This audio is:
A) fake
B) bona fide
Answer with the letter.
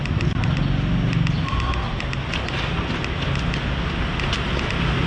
B